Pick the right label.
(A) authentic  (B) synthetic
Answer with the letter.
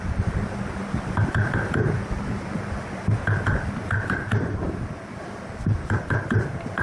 A